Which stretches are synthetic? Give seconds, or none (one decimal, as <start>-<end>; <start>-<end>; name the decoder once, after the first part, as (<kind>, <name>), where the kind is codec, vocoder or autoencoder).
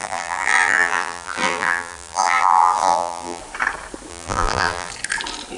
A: 0.0-3.4 (vocoder, BigVGAN v2); 4.1-4.9